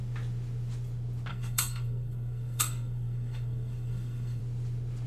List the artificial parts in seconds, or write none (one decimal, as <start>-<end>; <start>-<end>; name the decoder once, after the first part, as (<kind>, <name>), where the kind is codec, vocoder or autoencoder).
1.3-4.4 (codec, SNAC)